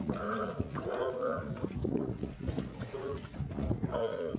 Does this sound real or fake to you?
fake